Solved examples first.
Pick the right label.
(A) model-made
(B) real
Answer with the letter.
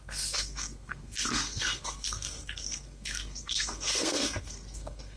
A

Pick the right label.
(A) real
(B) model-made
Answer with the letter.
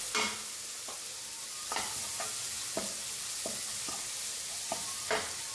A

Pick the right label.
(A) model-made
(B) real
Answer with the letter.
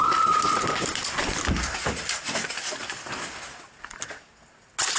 B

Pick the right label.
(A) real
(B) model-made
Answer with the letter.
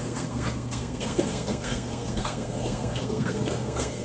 B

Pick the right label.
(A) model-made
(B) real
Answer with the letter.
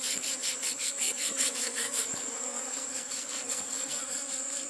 A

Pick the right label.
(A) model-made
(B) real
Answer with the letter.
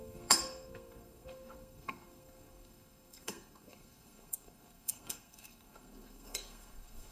A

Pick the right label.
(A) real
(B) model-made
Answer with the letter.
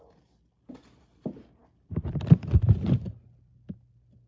A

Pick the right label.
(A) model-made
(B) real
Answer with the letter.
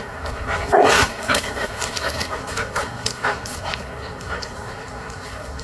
A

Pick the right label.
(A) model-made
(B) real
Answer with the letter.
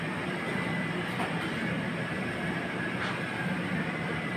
B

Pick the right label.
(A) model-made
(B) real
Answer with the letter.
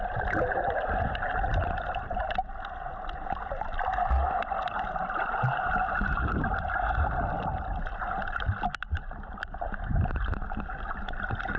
B